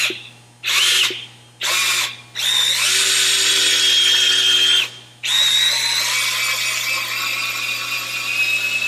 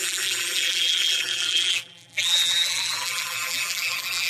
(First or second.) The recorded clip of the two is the first